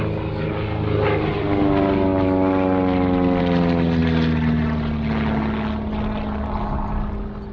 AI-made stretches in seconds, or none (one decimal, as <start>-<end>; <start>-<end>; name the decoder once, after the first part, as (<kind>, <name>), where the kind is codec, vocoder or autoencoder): none